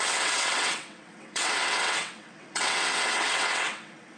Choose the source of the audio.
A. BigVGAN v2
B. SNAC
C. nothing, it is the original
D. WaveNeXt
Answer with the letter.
D